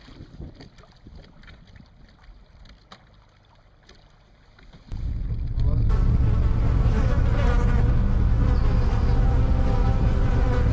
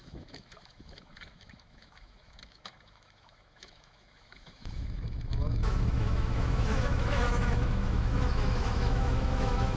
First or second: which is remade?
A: second